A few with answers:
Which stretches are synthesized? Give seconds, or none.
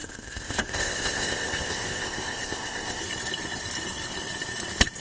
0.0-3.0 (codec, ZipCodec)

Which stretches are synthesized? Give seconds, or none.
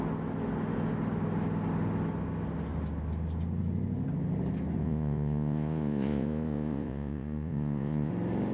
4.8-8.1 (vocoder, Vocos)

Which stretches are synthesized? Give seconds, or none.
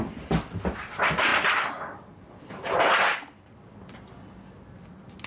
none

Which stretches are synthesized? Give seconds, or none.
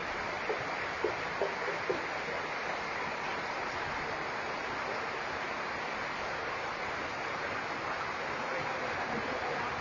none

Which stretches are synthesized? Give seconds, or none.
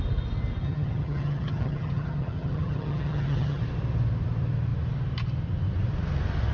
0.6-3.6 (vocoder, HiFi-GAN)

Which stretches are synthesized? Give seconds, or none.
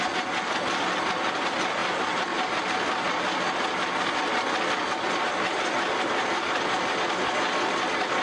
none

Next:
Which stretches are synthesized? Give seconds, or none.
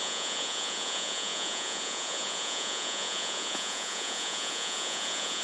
0.0-5.4 (vocoder, Vocos)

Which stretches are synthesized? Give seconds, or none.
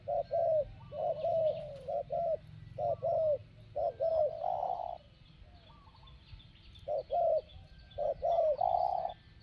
none